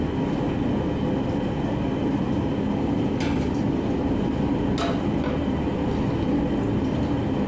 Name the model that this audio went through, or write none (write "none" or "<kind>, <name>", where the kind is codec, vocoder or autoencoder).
none